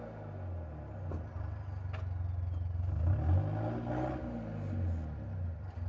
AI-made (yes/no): no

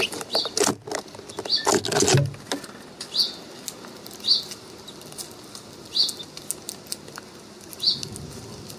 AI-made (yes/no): no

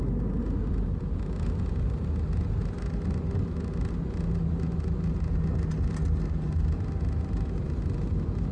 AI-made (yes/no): no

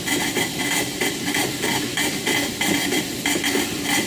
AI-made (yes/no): no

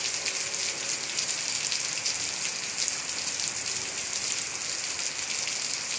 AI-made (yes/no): no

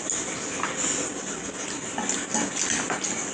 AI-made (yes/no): no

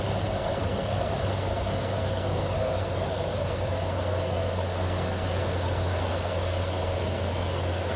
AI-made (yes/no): yes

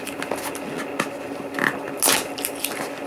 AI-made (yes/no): no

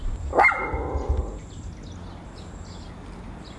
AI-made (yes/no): no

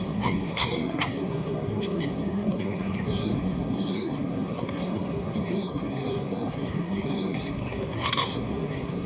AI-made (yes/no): yes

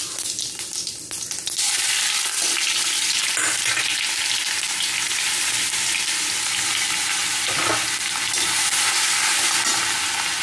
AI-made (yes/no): no